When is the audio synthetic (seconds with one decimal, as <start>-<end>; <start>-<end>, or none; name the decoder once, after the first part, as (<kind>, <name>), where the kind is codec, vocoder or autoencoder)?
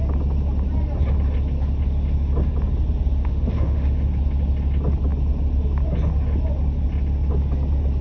3.2-4.1 (autoencoder, DAC-VAE)